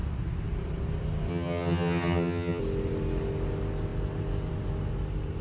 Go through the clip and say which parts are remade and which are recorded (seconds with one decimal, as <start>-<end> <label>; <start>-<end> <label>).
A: 0.0-1.3 recorded; 1.3-2.6 remade; 2.6-5.4 recorded

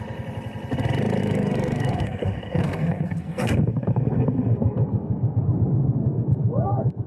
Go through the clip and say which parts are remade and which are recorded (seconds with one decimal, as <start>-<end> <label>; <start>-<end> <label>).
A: 0.0-1.2 recorded; 1.2-5.4 remade; 5.4-6.0 recorded; 6.0-7.1 remade

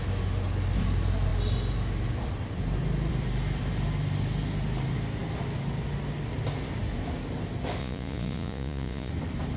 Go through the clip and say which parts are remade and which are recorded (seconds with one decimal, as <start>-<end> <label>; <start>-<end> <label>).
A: 0.0-7.8 recorded; 7.8-9.1 remade; 9.1-9.6 recorded